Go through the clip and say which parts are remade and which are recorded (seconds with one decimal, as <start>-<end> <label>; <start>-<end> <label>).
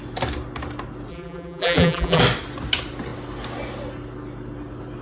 0.0-1.1 recorded; 1.1-2.2 remade; 2.2-5.0 recorded